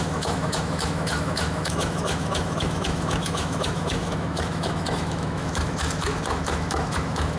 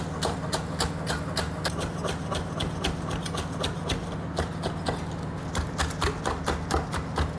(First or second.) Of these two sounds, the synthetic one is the first